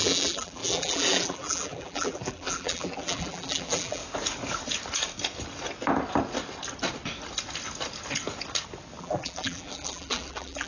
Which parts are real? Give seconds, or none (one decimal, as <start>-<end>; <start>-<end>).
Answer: 4.0-9.0